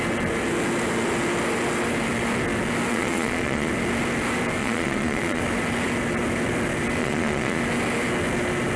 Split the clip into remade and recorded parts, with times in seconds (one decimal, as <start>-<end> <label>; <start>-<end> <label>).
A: 0.0-2.9 recorded; 2.9-3.7 remade; 3.7-4.6 recorded; 4.6-5.4 remade; 5.4-7.0 recorded; 7.0-7.6 remade; 7.6-8.8 recorded